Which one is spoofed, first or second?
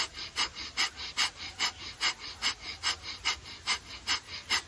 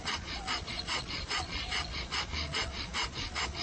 second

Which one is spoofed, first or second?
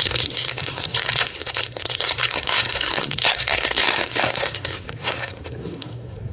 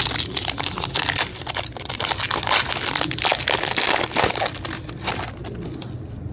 first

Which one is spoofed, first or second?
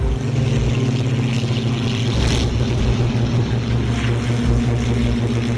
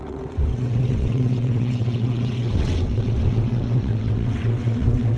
second